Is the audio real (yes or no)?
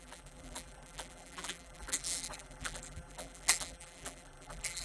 no